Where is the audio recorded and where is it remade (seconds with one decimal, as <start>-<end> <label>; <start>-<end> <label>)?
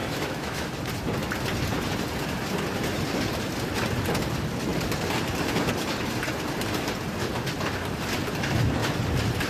0.0-0.7 remade; 0.7-9.5 recorded